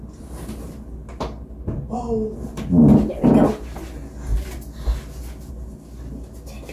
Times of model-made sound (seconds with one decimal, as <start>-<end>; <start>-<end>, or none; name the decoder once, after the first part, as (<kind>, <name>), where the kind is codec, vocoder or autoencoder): none